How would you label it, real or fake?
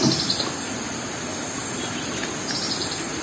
real